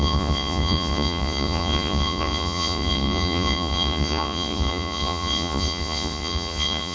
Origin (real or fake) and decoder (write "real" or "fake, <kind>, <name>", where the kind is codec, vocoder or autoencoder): fake, vocoder, Vocos